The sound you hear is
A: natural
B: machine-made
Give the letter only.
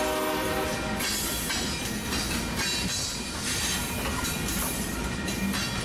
A